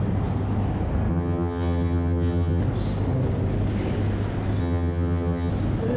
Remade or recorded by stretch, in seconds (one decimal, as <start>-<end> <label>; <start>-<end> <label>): 0.0-1.1 recorded; 1.1-2.6 remade; 2.6-4.6 recorded; 4.6-5.5 remade; 5.5-6.0 recorded